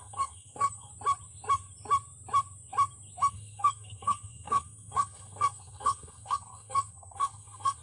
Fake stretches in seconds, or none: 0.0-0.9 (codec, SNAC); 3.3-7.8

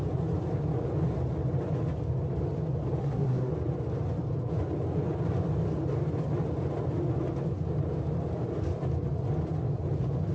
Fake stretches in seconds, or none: 3.0-3.5 (codec, SNAC)

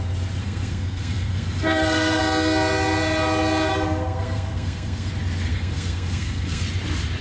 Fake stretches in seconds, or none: 0.4-2.2 (codec, SNAC); 3.7-5.1; 5.5-6.6

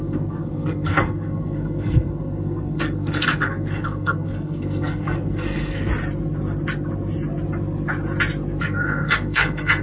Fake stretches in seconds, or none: 0.0-5.9 (codec, SNAC); 8.6-9.8

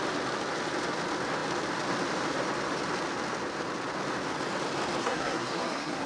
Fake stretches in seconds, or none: 5.0-6.1 (codec, SNAC)

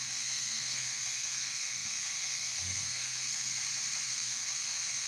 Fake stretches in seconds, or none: 0.0-3.5 (codec, SNAC); 4.1-5.1

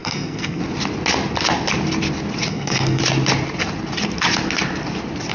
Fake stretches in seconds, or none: 0.0-0.6 (codec, SNAC); 2.5-3.0

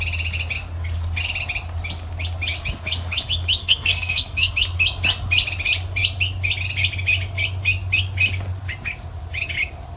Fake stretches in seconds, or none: 3.6-4.5 (codec, SNAC)